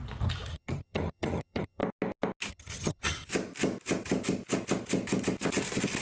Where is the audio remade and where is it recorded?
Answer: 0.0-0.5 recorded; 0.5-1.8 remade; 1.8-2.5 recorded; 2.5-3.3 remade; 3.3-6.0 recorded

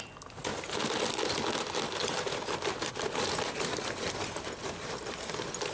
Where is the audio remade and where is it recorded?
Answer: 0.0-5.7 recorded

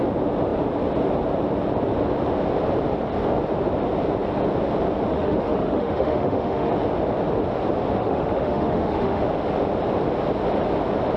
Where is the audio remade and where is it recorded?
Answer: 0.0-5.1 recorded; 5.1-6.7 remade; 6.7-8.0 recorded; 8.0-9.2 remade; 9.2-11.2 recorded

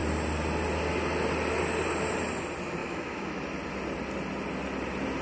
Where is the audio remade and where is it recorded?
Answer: 0.0-2.8 recorded; 2.8-3.4 remade; 3.4-5.2 recorded

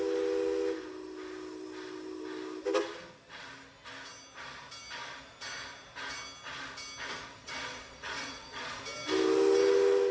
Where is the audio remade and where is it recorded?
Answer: 0.0-7.4 recorded; 7.4-8.8 remade; 8.8-10.1 recorded

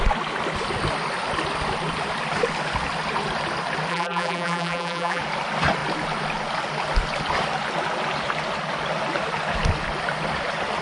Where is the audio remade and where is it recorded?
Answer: 0.0-3.9 recorded; 3.9-5.2 remade; 5.2-10.8 recorded